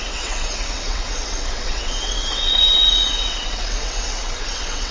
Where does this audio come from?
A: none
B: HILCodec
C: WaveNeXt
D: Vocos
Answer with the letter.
C